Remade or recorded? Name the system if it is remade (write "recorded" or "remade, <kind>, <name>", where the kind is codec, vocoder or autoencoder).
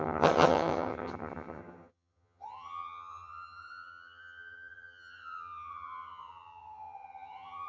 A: remade, vocoder, HiFi-GAN